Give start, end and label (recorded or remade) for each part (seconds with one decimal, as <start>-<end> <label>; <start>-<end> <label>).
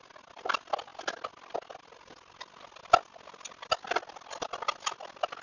0.0-5.4 recorded